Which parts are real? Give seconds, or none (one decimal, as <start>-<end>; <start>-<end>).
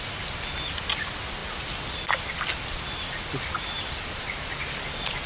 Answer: 0.0-5.3